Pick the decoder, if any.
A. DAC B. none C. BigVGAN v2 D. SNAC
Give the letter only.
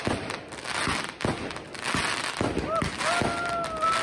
B